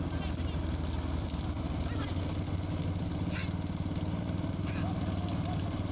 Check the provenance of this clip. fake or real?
real